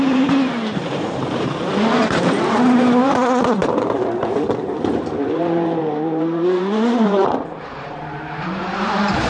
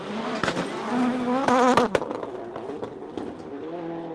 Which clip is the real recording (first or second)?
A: second